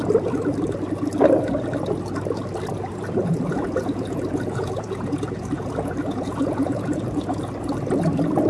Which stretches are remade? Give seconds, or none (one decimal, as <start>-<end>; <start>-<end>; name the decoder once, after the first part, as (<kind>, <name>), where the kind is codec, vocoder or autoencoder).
2.9-7.4 (vocoder, Vocos)